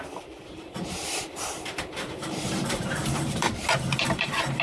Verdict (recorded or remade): remade